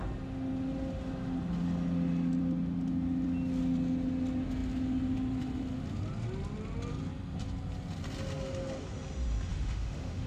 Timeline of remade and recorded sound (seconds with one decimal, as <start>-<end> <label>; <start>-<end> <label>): 0.0-9.5 recorded; 9.5-10.3 remade